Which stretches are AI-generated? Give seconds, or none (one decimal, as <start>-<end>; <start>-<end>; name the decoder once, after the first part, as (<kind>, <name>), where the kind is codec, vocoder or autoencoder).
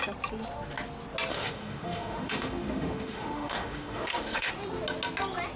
1.3-4.5 (autoencoder, DAC-VAE)